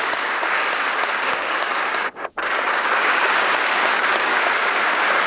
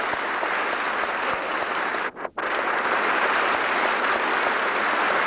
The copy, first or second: first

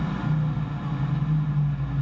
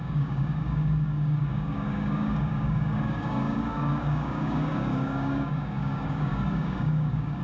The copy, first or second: second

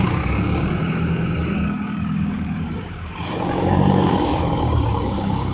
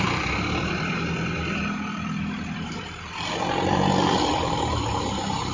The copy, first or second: first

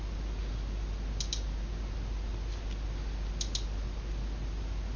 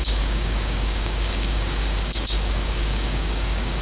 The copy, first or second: second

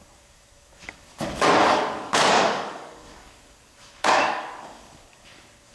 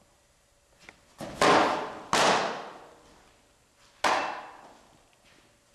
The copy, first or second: first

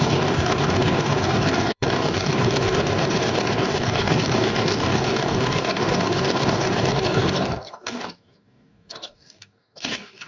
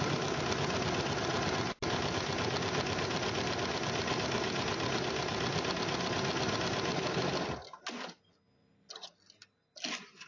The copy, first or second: first